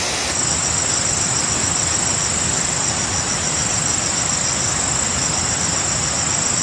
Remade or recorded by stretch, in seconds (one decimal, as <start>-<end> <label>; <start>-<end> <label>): 0.0-6.6 recorded